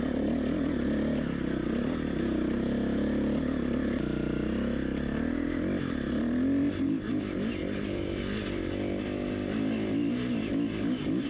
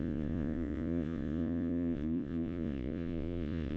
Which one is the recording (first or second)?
first